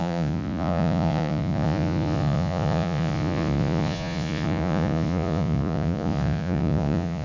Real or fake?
fake